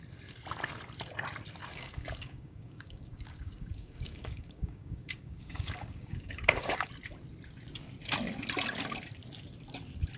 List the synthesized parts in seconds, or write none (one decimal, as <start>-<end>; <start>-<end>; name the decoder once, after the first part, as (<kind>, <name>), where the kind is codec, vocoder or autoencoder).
1.7-6.9 (codec, DAC)